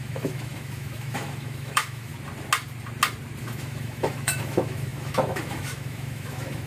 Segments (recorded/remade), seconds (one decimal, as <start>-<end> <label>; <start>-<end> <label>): 0.0-2.1 remade; 2.1-3.4 recorded; 3.4-6.7 remade